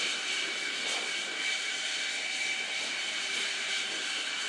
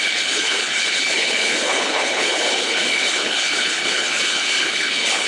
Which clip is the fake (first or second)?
second